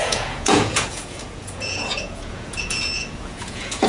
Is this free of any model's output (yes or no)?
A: no